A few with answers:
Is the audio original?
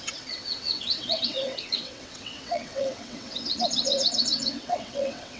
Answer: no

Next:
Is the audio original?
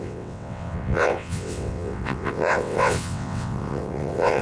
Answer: no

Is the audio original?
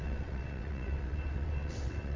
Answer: no